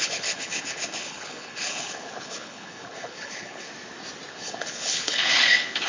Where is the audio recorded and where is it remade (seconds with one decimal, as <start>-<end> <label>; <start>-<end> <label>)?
0.0-3.7 remade; 3.7-4.3 recorded; 4.3-5.9 remade